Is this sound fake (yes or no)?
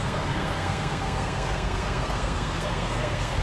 yes